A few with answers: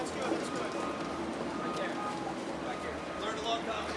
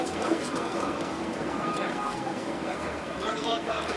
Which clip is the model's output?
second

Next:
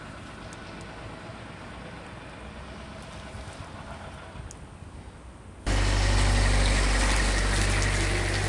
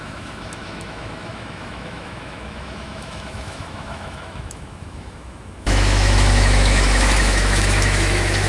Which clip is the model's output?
second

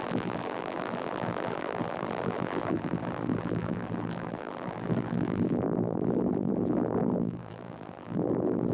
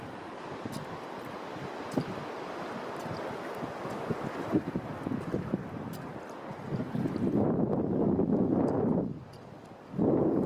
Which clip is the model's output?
first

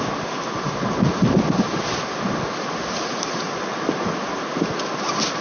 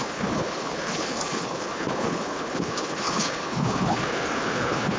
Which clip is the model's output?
second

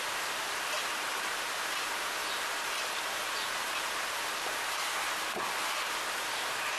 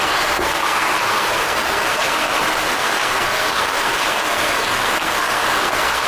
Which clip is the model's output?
second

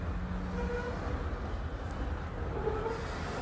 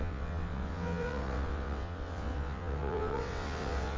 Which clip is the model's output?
second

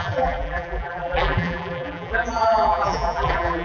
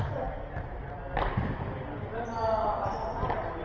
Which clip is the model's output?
first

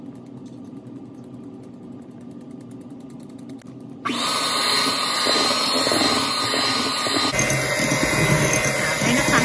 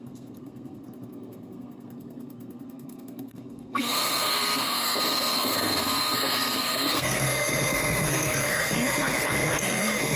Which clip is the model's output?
second